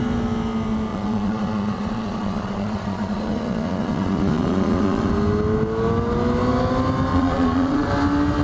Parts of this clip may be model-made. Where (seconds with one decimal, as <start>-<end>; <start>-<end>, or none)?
0.9-5.1; 7.1-7.9